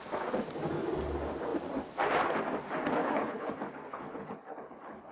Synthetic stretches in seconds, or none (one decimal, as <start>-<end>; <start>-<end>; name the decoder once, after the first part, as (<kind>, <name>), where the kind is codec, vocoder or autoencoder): 3.0-3.5 (codec, HILCodec); 3.9-5.1